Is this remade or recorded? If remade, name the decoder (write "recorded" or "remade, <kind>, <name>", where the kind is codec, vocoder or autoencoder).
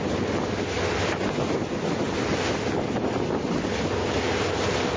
recorded